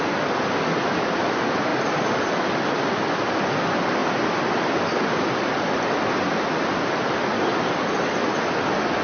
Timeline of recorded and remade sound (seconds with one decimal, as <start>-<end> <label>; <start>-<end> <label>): 0.0-9.0 recorded